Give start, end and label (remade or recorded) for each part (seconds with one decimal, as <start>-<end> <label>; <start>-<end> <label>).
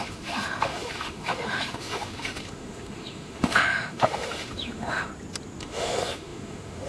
0.0-5.1 remade; 5.1-5.6 recorded; 5.6-6.9 remade